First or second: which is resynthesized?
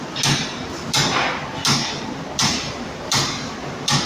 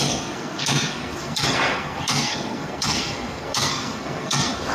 second